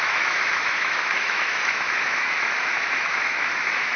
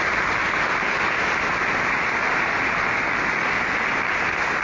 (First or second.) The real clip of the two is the second